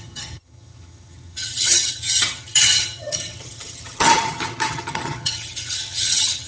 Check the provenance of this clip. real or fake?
fake